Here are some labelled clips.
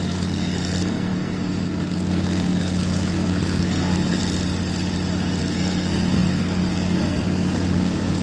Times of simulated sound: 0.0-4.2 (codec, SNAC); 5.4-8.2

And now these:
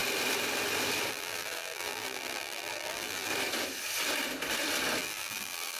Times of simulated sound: 1.1-3.3 (vocoder, BigVGAN v2); 5.0-5.8

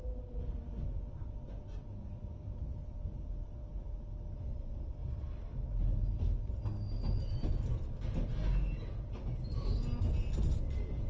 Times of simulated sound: none

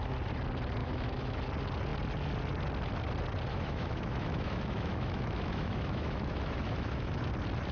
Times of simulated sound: 0.8-1.4 (autoencoder, DAC-VAE); 3.5-7.3

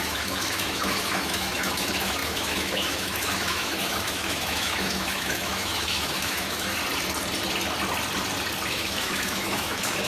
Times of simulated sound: 0.0-6.8 (autoencoder, DAC-VAE); 8.7-10.1

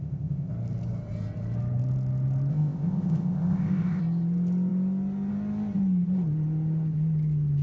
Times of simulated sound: 0.0-0.5 (codec, ZipCodec); 2.5-4.0

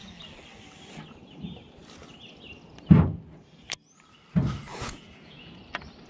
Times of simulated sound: 4.7-5.6 (vocoder, Vocos)

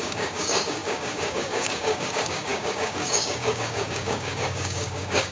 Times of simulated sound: 0.0-5.3 (codec, DAC)